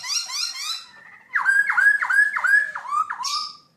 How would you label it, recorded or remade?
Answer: recorded